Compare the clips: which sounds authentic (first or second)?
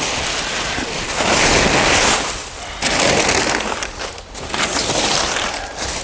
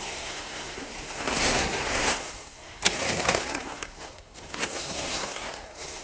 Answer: first